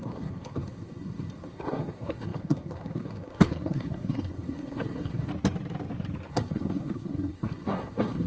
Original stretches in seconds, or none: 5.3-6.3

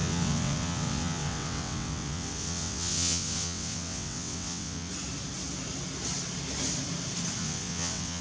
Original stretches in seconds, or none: 4.9-7.4

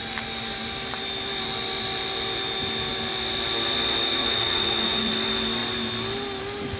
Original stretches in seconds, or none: 0.0-4.2; 5.1-6.8

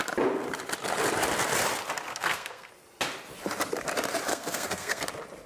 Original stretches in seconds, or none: 0.0-2.1; 2.7-4.3; 5.0-5.5

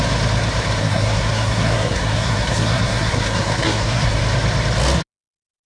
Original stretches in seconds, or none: 0.0-0.8; 4.2-5.7